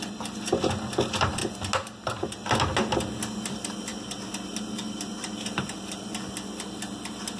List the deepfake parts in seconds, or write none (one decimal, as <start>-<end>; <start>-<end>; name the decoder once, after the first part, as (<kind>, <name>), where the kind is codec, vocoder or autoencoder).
0.0-1.4 (vocoder, BigVGAN v2); 3.5-3.9; 4.7-7.4